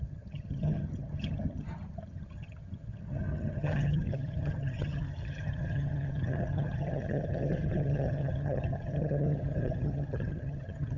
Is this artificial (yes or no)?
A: yes